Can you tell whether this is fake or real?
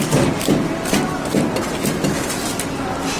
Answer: real